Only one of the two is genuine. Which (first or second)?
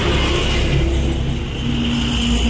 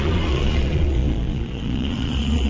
first